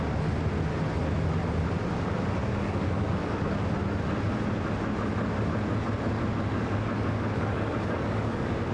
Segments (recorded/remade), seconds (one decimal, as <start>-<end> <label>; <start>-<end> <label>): 0.0-2.4 recorded; 2.4-3.6 remade; 3.6-6.6 recorded; 6.6-8.7 remade